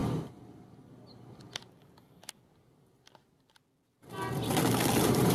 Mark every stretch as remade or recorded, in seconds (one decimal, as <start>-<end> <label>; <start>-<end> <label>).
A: 0.0-5.3 recorded